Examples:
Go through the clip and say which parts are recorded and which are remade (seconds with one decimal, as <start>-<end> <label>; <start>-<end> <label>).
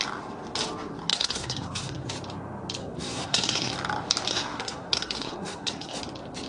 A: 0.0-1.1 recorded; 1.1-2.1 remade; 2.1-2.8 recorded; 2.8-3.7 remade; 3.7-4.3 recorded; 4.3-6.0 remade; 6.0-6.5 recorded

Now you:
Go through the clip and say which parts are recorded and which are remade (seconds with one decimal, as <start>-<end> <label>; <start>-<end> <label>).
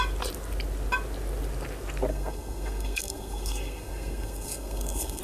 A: 0.0-2.1 recorded; 2.1-5.2 remade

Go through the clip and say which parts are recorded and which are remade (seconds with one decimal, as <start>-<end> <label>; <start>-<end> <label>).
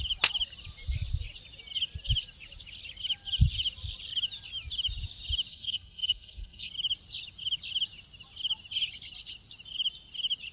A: 0.0-5.5 recorded; 5.5-6.7 remade; 6.7-10.5 recorded